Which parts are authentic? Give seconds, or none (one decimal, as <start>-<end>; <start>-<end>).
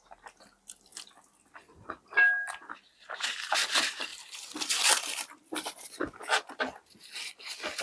0.0-4.1; 6.5-7.8